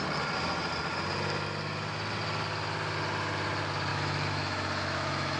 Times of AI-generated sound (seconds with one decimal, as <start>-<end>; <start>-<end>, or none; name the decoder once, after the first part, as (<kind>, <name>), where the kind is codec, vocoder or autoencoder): 3.9-5.4 (autoencoder, DAC-VAE)